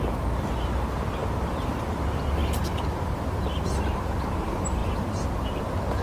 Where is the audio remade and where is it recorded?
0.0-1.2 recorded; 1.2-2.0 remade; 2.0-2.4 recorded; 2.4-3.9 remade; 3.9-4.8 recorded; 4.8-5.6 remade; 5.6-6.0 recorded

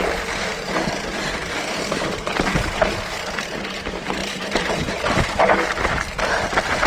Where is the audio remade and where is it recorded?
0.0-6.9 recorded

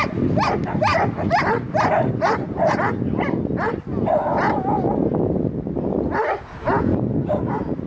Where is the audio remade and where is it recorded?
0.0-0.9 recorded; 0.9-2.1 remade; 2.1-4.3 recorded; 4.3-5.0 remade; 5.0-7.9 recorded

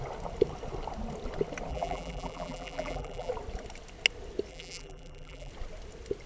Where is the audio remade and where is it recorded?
0.0-1.7 recorded; 1.7-3.3 remade; 3.3-4.5 recorded; 4.5-5.5 remade; 5.5-6.3 recorded

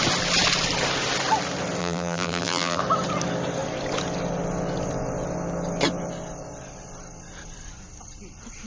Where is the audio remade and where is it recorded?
0.0-1.8 recorded; 1.8-2.8 remade; 2.8-8.7 recorded